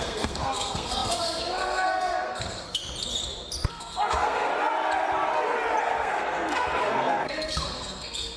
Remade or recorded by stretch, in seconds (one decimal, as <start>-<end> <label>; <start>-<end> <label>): 0.0-2.8 remade; 2.8-3.7 recorded; 3.7-4.5 remade; 4.5-5.8 recorded; 5.8-8.4 remade